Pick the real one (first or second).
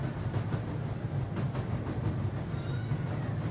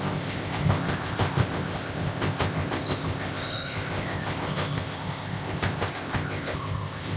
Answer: first